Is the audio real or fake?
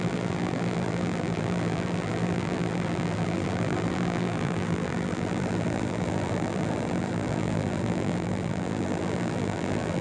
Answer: fake